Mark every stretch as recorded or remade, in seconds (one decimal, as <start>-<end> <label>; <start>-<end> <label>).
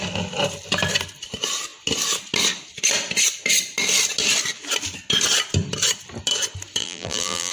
0.0-6.8 recorded; 6.8-7.5 remade